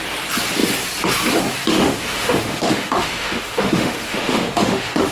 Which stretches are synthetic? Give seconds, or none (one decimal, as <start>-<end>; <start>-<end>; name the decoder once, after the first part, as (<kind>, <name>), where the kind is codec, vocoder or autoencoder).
1.7-5.1 (autoencoder, DAC-VAE)